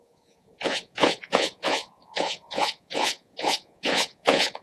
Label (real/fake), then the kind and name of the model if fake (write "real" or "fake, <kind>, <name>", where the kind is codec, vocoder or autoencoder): fake, vocoder, Vocos